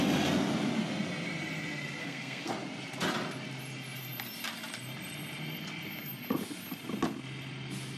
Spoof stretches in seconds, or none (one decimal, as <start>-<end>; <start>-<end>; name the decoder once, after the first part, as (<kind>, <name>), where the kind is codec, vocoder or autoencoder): 2.0-2.5 (codec, SNAC)